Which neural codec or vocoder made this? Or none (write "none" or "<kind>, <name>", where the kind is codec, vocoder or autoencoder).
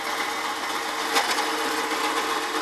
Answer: none